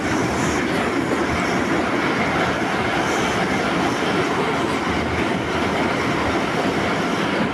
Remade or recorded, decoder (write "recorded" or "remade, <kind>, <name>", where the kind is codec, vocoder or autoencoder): recorded